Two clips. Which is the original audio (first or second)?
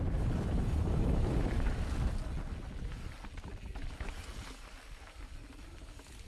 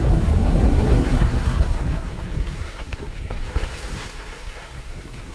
first